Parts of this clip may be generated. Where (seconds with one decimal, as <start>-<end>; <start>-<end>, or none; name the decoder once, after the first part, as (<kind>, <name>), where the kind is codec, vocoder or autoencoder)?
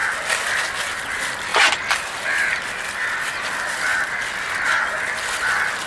none